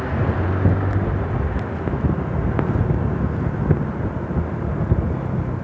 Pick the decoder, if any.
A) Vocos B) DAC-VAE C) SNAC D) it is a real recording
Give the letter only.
D